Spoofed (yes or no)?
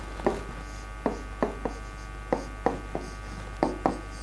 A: no